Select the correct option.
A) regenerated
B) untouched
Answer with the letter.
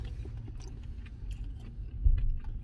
B